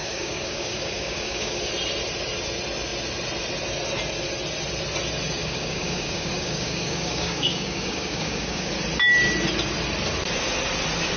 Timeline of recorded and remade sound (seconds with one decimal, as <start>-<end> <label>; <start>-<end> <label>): 0.0-1.7 remade; 1.7-5.4 recorded; 5.4-8.7 remade; 8.7-11.2 recorded